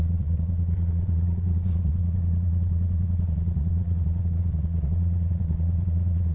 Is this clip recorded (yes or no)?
no